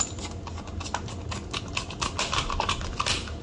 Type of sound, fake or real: real